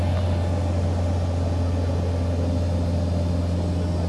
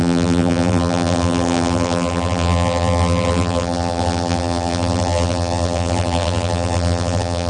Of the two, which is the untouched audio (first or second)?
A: first